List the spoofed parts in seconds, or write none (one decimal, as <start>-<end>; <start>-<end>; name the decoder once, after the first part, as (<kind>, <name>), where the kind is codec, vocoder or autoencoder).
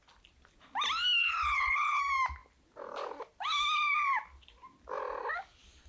1.2-2.0 (codec, HILCodec)